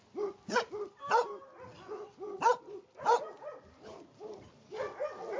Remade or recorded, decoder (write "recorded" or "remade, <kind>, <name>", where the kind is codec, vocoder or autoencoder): recorded